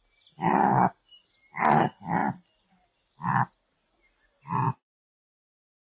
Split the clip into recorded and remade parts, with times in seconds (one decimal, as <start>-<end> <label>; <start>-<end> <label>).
0.0-5.9 recorded